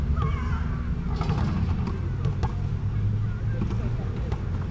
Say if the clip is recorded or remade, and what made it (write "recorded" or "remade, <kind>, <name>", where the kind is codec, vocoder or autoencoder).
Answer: recorded